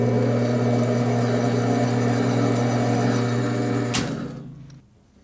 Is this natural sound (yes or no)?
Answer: yes